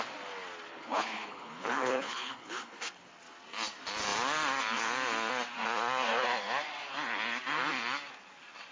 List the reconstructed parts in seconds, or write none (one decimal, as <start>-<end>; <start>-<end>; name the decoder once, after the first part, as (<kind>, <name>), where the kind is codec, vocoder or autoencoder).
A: 0.7-3.1 (codec, HILCodec)